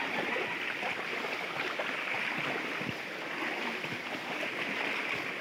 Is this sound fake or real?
real